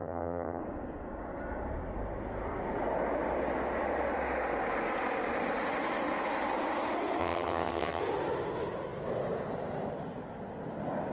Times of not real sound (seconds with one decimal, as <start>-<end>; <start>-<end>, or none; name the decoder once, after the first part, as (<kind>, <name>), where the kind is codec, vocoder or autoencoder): 0.0-0.6 (vocoder, HiFi-GAN); 7.2-8.0